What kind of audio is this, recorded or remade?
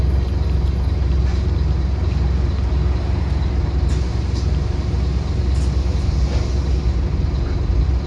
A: recorded